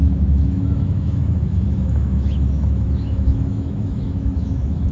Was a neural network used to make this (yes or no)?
yes